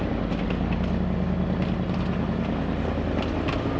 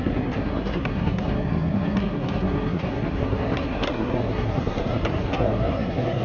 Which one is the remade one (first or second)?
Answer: second